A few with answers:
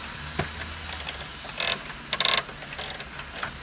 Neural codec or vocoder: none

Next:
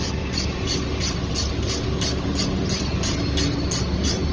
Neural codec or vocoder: none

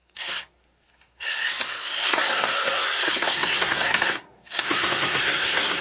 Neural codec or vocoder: codec, SNAC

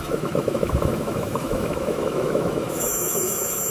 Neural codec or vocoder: autoencoder, DAC-VAE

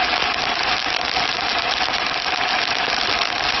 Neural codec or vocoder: none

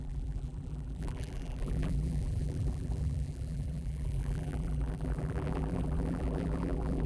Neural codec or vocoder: vocoder, BigVGAN v2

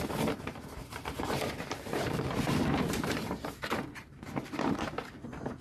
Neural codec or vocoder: vocoder, BigVGAN v2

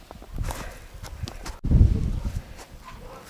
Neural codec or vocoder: none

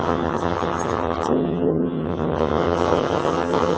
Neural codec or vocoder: vocoder, HiFi-GAN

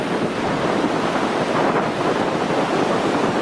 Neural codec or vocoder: none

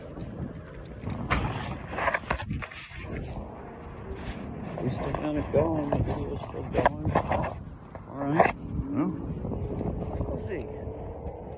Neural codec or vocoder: none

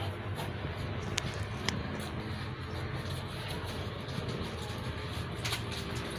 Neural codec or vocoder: none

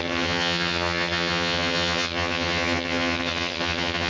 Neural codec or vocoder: vocoder, HiFi-GAN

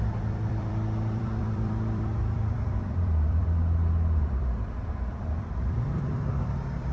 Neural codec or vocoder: vocoder, BigVGAN v2